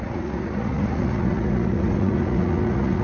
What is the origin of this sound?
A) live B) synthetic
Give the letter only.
B